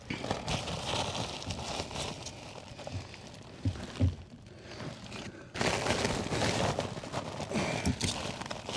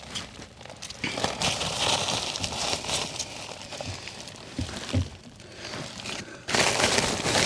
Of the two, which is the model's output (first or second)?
second